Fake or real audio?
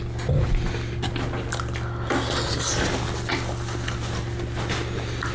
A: real